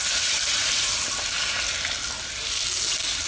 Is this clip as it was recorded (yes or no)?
yes